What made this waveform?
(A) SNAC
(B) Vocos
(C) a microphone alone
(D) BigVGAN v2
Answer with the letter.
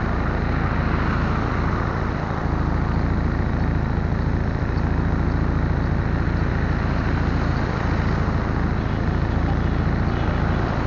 C